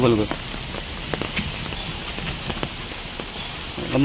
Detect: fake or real real